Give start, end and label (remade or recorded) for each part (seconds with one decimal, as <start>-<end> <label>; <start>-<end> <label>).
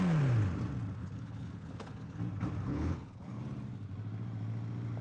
0.0-1.0 recorded; 1.0-2.2 remade; 2.2-2.7 recorded; 2.7-3.4 remade; 3.4-5.0 recorded